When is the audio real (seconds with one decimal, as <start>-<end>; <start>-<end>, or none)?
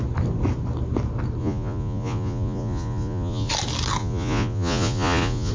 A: 0.0-1.4; 3.5-4.0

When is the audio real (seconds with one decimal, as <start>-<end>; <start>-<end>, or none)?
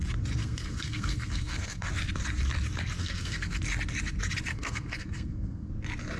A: 0.0-0.4; 1.9-3.0; 3.6-4.5; 5.7-6.2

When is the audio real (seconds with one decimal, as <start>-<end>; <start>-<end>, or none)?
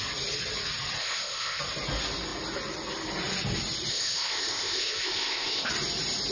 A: 0.0-1.0; 1.6-3.9; 5.7-6.3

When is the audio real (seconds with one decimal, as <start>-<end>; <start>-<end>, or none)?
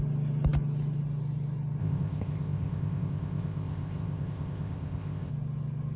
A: 0.0-1.8; 5.3-6.0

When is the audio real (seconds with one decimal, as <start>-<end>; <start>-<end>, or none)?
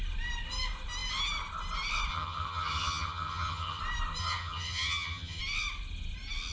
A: 0.0-2.1; 3.8-4.2; 5.4-6.5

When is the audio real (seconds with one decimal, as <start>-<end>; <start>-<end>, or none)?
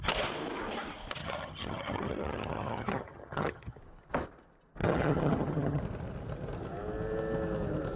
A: 0.0-1.2; 3.8-4.8; 5.8-8.0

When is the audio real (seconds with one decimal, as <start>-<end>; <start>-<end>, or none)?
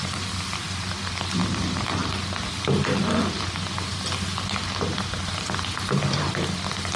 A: 0.0-7.0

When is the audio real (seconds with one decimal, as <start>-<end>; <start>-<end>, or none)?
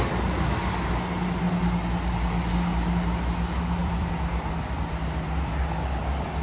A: 0.0-3.8; 5.6-6.4